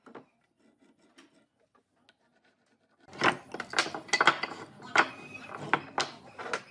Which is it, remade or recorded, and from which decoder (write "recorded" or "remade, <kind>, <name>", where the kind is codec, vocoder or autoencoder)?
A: recorded